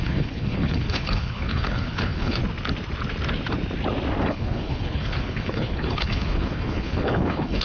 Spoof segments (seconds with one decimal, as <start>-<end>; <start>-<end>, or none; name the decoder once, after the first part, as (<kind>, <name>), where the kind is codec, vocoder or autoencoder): 0.0-2.4 (codec, HILCodec); 4.2-7.6

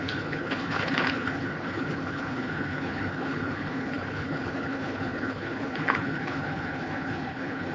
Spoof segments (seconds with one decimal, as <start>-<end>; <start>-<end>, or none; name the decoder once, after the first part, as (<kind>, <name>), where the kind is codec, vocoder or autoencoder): 0.0-7.7 (codec, HILCodec)